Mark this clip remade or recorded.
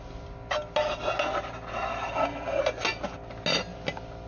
recorded